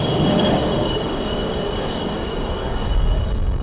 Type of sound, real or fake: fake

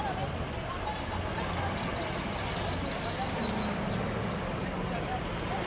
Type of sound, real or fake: real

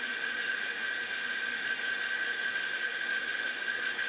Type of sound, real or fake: fake